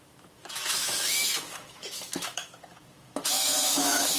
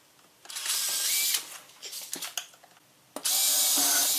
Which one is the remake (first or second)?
first